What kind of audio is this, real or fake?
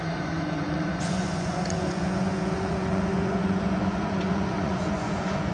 fake